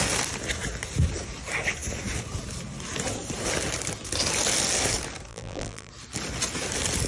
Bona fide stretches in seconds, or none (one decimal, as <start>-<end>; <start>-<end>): 0.0-5.3; 5.9-7.1